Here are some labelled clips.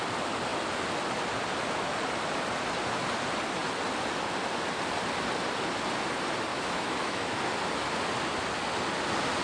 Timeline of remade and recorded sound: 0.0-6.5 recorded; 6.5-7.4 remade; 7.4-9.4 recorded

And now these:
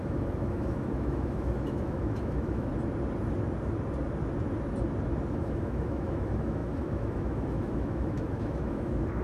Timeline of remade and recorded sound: 0.0-2.7 remade; 2.7-5.3 recorded; 5.3-9.2 remade

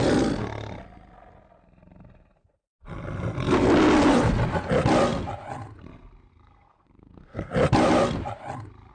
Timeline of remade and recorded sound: 0.0-6.3 recorded; 6.3-7.5 remade; 7.5-8.9 recorded

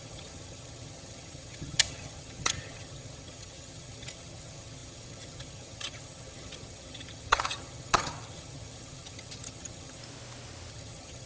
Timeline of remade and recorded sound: 0.0-10.0 remade; 10.0-10.7 recorded; 10.7-11.3 remade

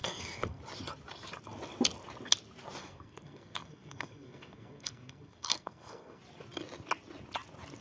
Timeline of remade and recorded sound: 0.0-0.6 remade; 0.6-2.8 recorded; 2.8-6.2 remade; 6.2-7.8 recorded